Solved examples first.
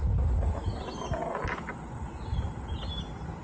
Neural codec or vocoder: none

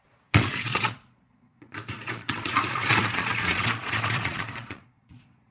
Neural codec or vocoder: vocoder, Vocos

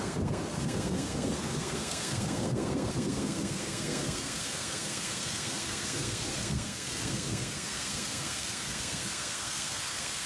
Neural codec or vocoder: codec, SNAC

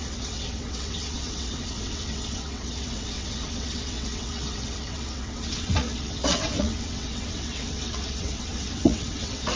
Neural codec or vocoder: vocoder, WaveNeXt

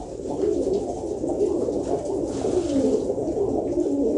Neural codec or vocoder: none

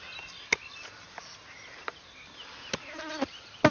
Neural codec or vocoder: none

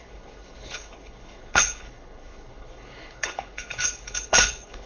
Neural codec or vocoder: codec, HILCodec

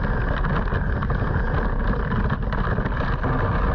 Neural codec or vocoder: none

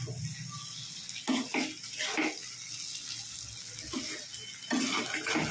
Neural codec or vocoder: none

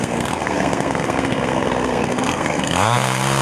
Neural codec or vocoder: codec, SNAC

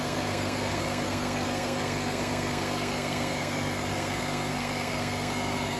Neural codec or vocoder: codec, SNAC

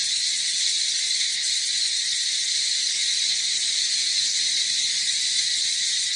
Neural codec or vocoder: none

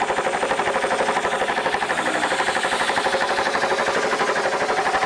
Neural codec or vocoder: none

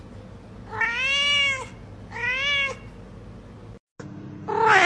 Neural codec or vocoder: none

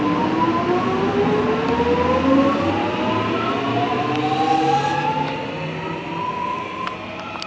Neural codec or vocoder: none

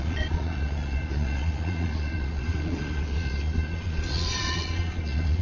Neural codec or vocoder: vocoder, Vocos